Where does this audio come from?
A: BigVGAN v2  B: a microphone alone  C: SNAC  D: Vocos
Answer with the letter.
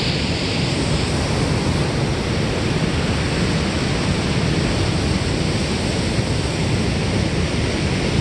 B